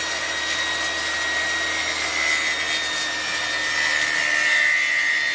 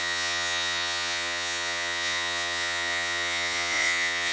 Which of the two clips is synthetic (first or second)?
second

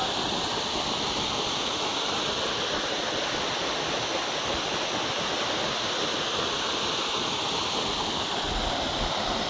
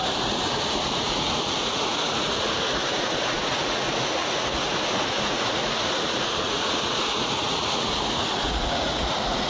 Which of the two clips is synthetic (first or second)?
second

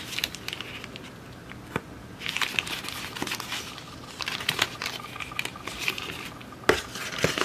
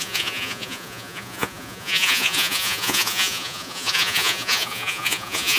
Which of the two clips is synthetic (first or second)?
second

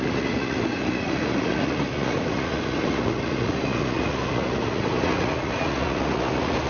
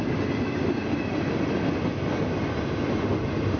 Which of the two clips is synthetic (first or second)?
first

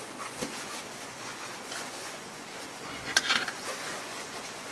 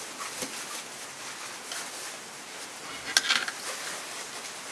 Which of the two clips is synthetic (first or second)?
first